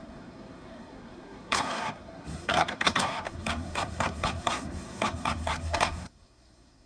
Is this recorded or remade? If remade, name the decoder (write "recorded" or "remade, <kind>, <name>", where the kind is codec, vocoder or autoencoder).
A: remade, codec, SNAC